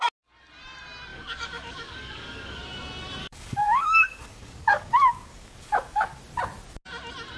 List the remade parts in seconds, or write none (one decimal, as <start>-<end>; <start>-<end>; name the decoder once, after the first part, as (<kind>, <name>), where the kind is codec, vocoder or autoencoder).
1.1-2.6 (codec, DAC); 3.2-6.2